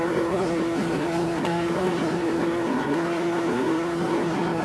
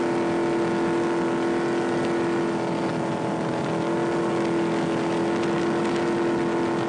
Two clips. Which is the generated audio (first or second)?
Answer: first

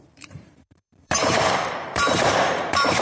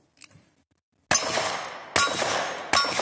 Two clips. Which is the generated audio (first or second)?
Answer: first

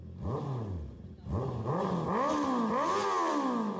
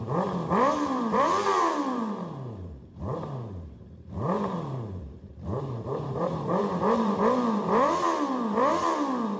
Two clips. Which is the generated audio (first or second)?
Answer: second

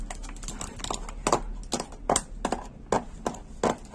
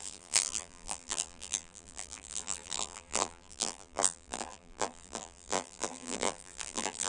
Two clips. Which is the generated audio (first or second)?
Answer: second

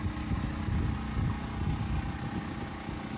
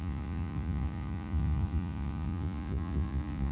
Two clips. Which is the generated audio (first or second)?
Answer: second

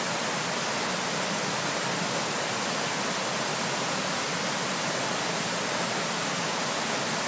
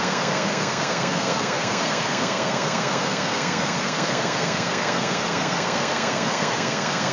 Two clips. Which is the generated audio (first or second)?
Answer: second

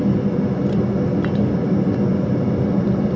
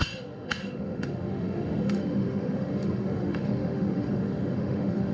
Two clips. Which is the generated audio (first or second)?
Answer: second